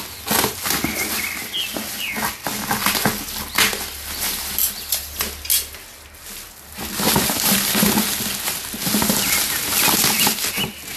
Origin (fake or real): real